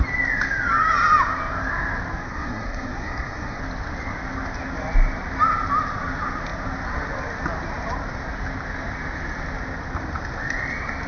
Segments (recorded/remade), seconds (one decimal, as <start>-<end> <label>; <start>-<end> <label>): 0.0-2.2 recorded; 2.2-3.6 remade; 3.6-11.1 recorded